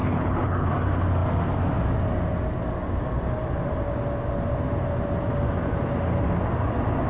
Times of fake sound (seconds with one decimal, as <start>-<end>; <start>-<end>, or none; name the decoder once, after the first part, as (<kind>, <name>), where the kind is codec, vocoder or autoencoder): 0.0-0.7 (codec, HILCodec)